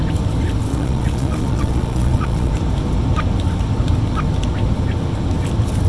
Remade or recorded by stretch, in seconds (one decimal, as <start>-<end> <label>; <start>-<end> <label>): 0.0-0.7 recorded; 0.7-2.5 remade; 2.5-5.9 recorded